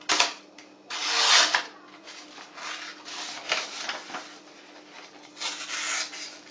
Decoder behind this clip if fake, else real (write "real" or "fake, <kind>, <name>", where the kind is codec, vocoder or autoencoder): real